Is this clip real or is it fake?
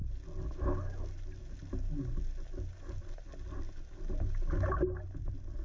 real